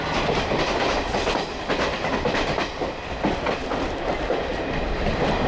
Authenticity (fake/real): fake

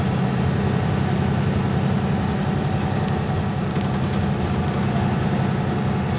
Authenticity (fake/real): real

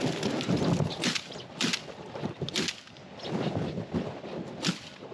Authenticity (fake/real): real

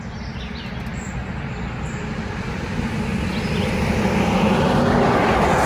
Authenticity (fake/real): real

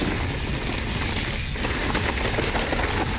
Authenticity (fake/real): real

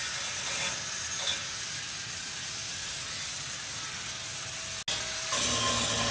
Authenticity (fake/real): real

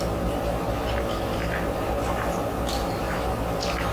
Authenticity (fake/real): real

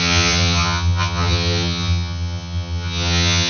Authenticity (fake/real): fake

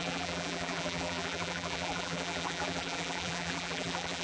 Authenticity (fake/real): fake